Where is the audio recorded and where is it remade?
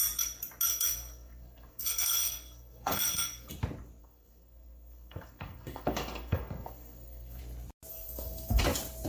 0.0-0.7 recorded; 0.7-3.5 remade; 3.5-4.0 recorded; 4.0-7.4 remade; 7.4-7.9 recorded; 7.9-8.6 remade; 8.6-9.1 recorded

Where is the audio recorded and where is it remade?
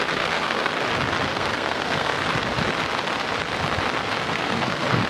0.0-0.7 remade; 0.7-1.3 recorded; 1.3-2.2 remade; 2.2-4.2 recorded; 4.2-5.1 remade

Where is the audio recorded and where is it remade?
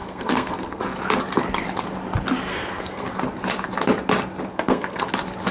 0.0-0.8 remade; 0.8-2.5 recorded; 2.5-3.1 remade; 3.1-4.5 recorded; 4.5-5.0 remade; 5.0-5.5 recorded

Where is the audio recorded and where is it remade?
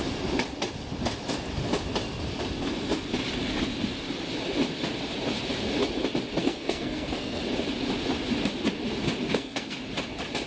0.0-6.4 recorded; 6.4-7.4 remade; 7.4-9.3 recorded; 9.3-9.8 remade; 9.8-10.5 recorded